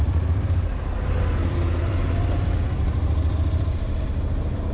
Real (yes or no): no